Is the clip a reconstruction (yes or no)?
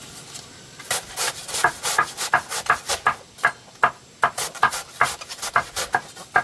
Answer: no